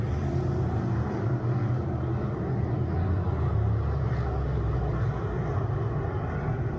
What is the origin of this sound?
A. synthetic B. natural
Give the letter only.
B